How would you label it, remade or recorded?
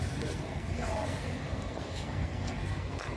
remade